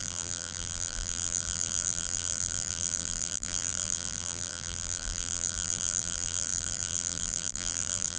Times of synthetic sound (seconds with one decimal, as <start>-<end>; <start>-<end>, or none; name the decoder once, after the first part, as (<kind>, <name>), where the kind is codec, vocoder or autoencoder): 0.0-8.2 (vocoder, BigVGAN v2)